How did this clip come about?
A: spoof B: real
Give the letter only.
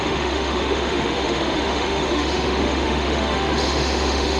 A